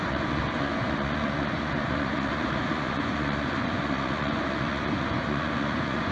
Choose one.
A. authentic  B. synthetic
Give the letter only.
B